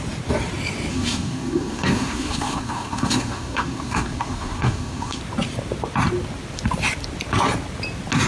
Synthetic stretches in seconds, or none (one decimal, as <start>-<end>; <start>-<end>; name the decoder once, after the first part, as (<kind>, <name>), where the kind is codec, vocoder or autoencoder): 0.9-5.2 (codec, SNAC)